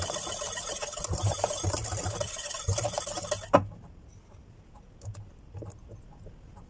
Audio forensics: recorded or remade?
recorded